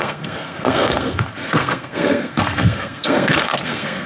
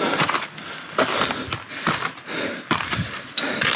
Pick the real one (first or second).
second